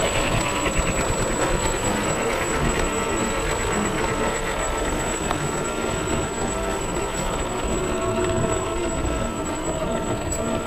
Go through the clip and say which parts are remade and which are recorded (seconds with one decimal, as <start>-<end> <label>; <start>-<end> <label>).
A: 0.0-0.7 remade; 0.7-1.4 recorded; 1.4-10.7 remade